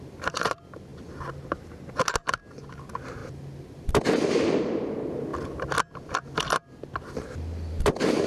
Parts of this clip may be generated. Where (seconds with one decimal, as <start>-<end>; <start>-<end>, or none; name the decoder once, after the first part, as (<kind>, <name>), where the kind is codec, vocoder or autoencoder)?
0.0-0.9 (vocoder, BigVGAN v2); 2.5-5.3; 7.7-8.3